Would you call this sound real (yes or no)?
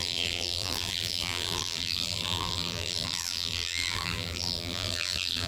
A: no